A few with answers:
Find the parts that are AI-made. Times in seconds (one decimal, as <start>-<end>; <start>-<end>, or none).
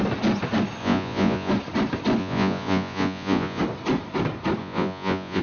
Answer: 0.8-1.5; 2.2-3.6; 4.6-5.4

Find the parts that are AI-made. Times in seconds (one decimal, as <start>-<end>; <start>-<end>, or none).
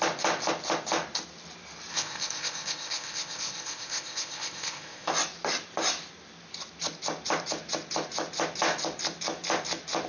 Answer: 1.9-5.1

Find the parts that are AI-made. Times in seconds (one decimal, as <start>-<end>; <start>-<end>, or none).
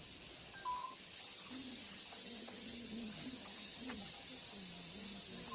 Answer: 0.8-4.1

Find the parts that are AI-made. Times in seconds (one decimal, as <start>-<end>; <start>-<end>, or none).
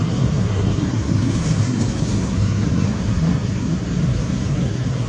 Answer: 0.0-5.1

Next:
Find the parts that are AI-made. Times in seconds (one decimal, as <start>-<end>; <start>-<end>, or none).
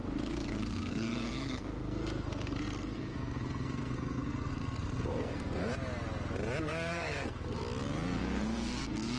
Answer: 0.0-5.7; 6.6-7.6; 8.2-9.2